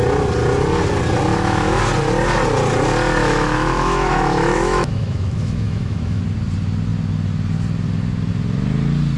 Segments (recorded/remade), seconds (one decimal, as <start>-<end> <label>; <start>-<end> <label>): 0.0-1.3 recorded; 1.3-1.8 remade; 1.8-3.2 recorded; 3.2-6.2 remade; 6.2-9.2 recorded